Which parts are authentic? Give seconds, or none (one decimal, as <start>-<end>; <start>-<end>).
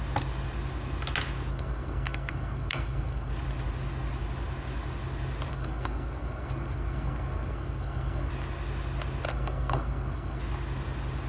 0.0-1.5; 3.3-5.5; 8.3-9.3; 10.4-11.3